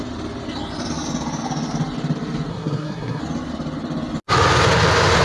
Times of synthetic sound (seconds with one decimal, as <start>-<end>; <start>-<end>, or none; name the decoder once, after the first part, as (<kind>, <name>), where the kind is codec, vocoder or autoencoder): 2.5-3.2 (codec, SNAC)

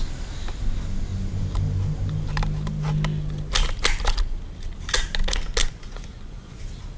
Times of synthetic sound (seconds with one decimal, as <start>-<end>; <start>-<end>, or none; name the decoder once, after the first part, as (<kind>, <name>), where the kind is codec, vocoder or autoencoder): 5.6-6.6 (vocoder, Vocos)